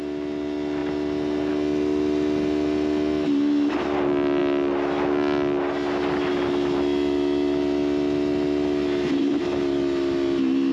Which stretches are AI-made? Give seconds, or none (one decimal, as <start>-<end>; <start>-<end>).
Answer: none